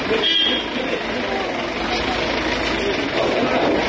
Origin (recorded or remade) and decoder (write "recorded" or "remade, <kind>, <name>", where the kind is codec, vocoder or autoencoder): recorded